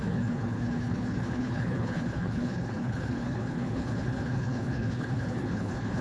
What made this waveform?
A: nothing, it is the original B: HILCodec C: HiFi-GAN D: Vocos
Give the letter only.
B